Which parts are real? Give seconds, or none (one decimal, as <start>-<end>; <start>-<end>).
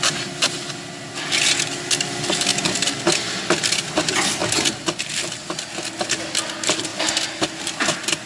0.0-8.3